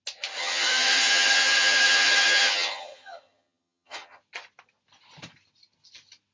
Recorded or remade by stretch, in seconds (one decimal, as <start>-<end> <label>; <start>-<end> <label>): 0.0-0.4 recorded; 0.4-4.2 remade; 4.2-6.3 recorded